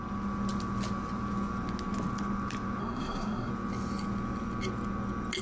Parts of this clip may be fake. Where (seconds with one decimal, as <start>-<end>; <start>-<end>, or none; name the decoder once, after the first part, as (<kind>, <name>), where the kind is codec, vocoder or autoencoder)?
2.8-3.5 (codec, SNAC)